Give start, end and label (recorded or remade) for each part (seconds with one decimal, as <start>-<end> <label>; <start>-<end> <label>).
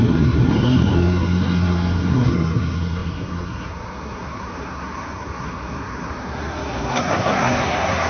0.0-8.1 remade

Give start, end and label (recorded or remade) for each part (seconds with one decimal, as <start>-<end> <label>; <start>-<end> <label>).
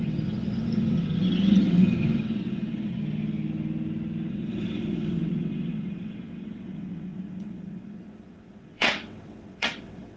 0.0-3.0 remade; 3.0-4.3 recorded; 4.3-10.2 remade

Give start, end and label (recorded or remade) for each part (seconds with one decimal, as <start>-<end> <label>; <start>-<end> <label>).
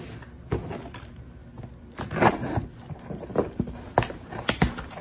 0.0-5.0 recorded